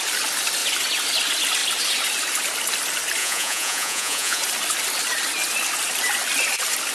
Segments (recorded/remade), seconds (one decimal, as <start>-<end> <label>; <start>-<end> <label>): 0.0-3.2 recorded; 3.2-4.4 remade; 4.4-6.9 recorded